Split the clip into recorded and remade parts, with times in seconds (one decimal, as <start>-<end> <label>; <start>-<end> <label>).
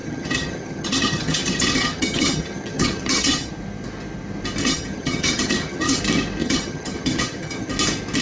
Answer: 0.0-3.5 remade; 3.5-4.6 recorded; 4.6-6.0 remade; 6.0-6.4 recorded; 6.4-7.7 remade; 7.7-8.2 recorded